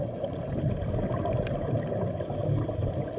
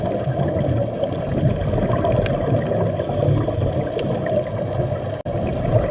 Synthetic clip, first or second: first